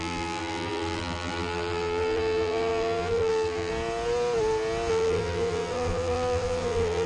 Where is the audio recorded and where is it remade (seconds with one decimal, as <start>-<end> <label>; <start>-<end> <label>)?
0.0-3.7 remade; 3.7-4.9 recorded; 4.9-7.1 remade